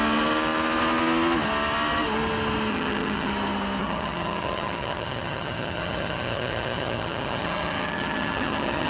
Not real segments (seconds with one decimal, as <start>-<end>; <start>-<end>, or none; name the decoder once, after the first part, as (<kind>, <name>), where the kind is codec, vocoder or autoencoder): 2.7-3.3 (vocoder, HiFi-GAN); 3.8-8.9